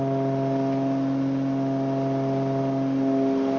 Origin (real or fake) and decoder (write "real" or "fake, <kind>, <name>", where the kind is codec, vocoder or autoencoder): real